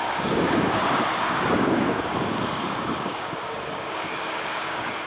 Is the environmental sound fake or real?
fake